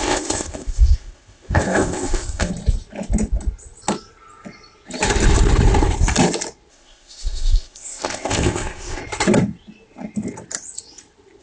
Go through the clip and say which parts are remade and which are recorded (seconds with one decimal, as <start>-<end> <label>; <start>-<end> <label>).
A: 0.0-2.5 remade; 2.5-6.7 recorded; 6.7-9.0 remade; 9.0-11.4 recorded